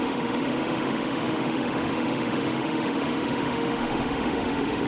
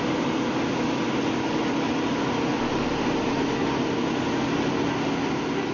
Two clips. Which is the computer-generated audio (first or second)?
first